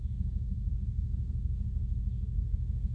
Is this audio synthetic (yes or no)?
yes